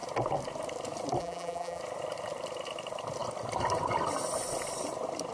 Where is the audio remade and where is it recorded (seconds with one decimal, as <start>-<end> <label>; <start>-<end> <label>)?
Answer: 0.0-1.2 recorded; 1.2-1.8 remade; 1.8-5.3 recorded